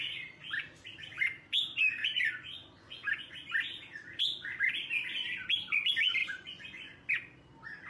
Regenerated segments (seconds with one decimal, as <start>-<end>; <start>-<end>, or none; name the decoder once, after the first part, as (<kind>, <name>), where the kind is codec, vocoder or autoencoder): 2.0-3.5 (vocoder, Vocos); 6.2-7.1